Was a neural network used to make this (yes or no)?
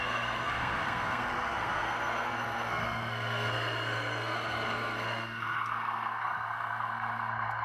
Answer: yes